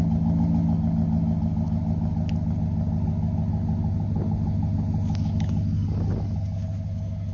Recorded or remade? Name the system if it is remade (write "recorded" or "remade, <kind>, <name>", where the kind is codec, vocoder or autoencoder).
recorded